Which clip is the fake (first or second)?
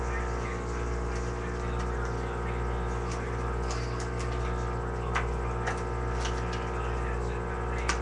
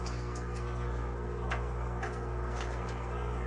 second